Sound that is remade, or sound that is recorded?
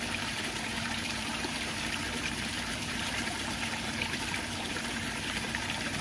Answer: remade